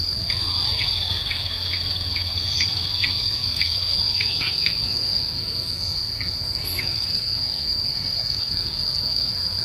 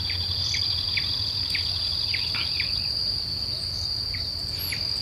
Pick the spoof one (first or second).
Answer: first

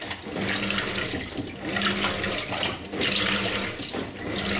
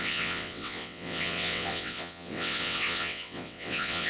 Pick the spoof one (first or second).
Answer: second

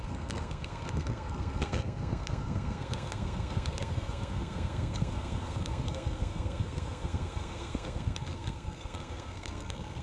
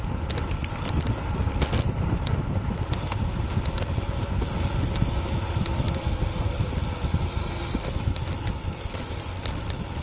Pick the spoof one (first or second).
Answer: first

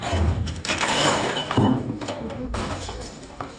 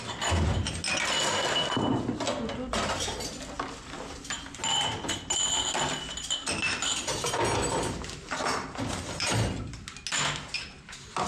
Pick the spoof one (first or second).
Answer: first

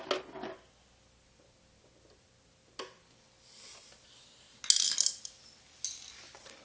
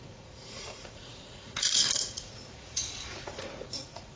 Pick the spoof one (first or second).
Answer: second